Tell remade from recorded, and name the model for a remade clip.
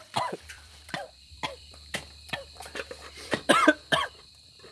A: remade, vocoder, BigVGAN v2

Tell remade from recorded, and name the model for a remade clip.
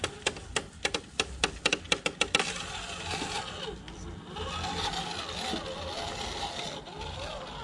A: recorded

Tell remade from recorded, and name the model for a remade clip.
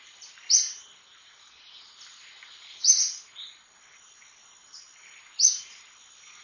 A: recorded